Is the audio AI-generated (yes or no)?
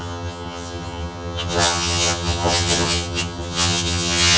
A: yes